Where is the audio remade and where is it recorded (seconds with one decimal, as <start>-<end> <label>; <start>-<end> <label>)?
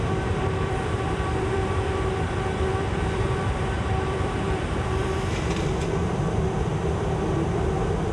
0.0-6.7 remade; 6.7-8.1 recorded